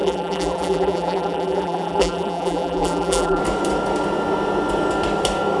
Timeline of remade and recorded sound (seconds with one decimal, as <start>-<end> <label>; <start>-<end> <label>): 0.0-3.4 remade; 3.4-5.6 recorded